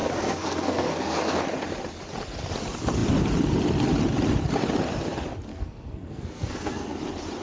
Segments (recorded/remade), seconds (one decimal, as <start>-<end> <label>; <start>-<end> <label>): 0.0-1.4 remade; 1.4-5.5 recorded; 5.5-7.0 remade; 7.0-7.4 recorded